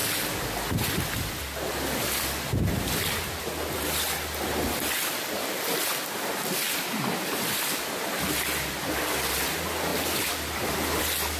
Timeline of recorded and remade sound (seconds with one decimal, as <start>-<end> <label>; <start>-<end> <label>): 0.0-11.4 recorded